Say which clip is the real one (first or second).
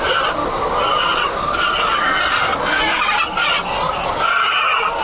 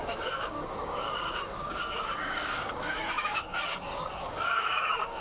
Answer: first